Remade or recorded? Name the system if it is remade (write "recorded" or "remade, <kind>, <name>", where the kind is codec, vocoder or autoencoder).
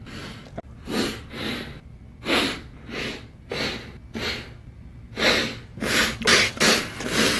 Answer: recorded